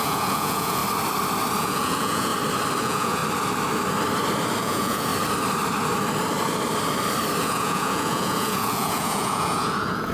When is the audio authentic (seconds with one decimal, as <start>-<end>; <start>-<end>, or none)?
0.8-1.6; 2.3-2.8; 3.2-4.6; 5.1-7.4